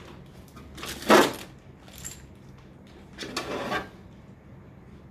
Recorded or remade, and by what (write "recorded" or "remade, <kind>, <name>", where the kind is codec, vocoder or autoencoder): recorded